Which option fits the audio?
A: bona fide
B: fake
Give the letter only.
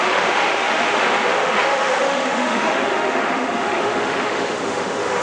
B